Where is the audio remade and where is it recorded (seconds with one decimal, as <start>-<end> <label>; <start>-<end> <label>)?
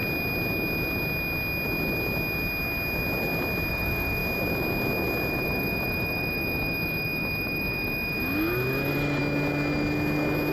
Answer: 0.0-3.7 recorded; 3.7-4.2 remade; 4.2-5.3 recorded; 5.3-9.2 remade; 9.2-10.5 recorded